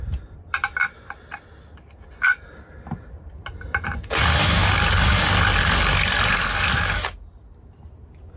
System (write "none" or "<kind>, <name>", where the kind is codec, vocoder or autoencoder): none